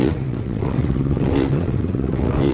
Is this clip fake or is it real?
fake